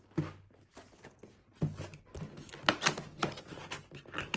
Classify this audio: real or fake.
real